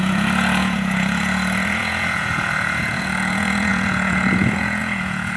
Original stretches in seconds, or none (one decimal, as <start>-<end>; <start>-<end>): none